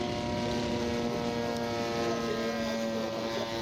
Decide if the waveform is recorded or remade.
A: recorded